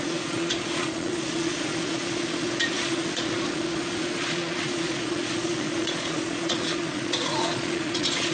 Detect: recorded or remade remade